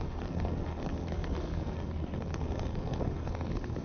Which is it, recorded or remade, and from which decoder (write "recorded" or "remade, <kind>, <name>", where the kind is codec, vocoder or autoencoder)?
remade, codec, SNAC